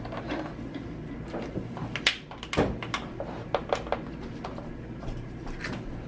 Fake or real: real